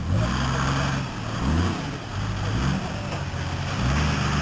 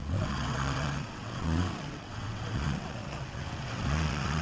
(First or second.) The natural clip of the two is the first